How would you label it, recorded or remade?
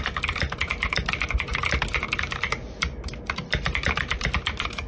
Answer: remade